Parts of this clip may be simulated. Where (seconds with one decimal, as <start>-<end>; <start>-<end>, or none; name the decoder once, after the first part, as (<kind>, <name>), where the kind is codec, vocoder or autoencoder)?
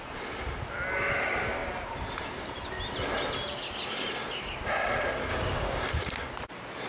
5.3-5.9 (codec, DAC)